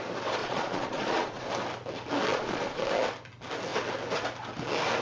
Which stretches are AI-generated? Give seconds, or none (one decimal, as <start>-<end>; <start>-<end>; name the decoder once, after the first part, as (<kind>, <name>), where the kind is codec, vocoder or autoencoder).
0.4-1.5 (vocoder, Vocos); 2.3-2.8